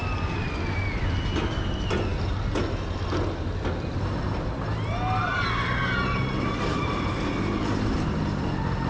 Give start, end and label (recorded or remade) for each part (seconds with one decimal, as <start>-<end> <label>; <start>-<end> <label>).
0.0-8.9 recorded